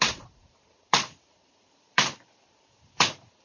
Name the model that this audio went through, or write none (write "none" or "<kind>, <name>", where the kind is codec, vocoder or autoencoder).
vocoder, BigVGAN v2